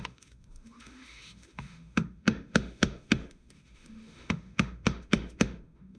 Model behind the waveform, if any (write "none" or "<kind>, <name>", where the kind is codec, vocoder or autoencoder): autoencoder, DAC-VAE